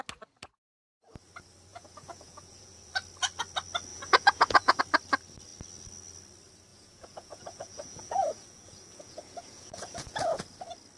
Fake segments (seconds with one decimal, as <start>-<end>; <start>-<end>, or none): 1.7-2.9; 3.9-4.8; 6.7-10.4

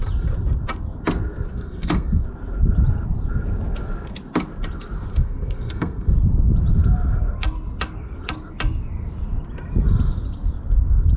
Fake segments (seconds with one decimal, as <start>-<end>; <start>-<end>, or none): 1.5-2.2; 5.1-6.1

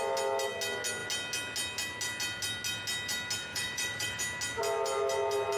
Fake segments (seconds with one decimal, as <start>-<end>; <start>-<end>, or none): 3.5-4.2

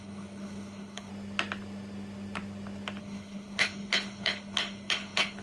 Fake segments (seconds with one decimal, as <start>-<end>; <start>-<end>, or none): 0.0-1.1; 3.0-5.4

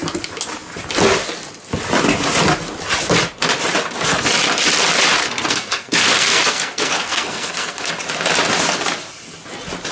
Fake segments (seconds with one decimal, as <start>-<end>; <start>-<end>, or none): 5.2-7.9

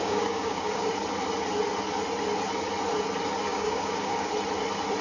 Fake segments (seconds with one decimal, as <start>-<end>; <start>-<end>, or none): 0.0-0.9; 3.5-4.3

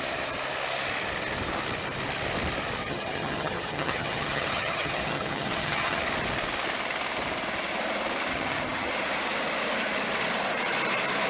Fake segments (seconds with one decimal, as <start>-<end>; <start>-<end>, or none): 2.8-6.0; 8.3-8.9

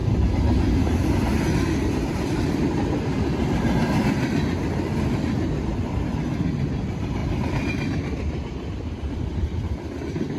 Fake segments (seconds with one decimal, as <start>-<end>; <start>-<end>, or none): 2.1-10.4